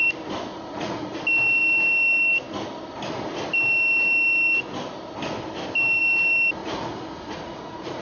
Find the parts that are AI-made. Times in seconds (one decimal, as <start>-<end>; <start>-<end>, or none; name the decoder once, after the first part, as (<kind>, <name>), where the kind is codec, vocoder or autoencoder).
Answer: 0.5-1.2 (vocoder, Vocos); 6.6-8.0